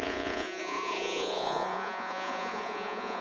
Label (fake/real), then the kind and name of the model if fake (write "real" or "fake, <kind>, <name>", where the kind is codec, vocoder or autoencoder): fake, vocoder, Vocos